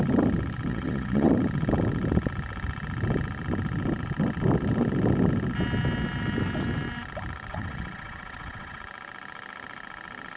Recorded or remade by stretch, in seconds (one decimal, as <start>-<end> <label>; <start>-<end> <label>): 0.0-0.7 recorded; 0.7-1.3 remade; 1.3-7.5 recorded; 7.5-8.8 remade; 8.8-10.4 recorded